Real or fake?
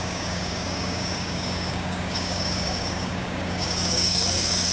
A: fake